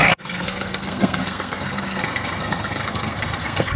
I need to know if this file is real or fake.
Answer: fake